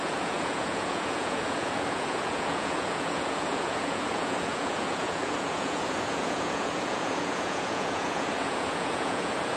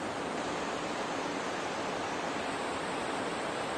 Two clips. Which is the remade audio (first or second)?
first